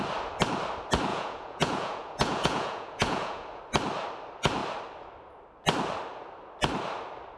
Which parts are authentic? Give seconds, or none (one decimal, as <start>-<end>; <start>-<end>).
0.0-1.1; 3.6-7.4